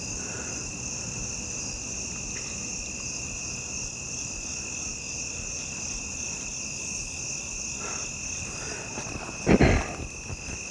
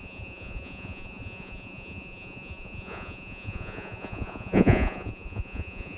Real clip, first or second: first